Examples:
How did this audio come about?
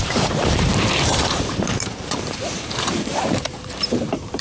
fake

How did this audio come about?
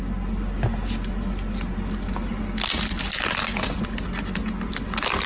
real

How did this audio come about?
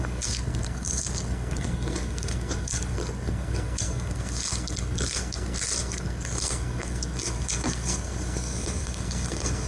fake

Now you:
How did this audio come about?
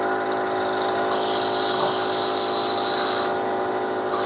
real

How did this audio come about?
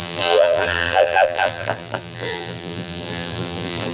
fake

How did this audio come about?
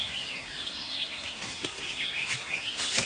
fake